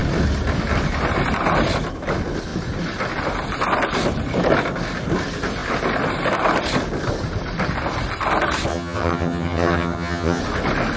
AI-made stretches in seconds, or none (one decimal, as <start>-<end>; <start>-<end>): 8.7-10.4